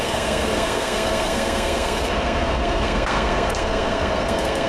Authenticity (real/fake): fake